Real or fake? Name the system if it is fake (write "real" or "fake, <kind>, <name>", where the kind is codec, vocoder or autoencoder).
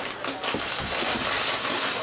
real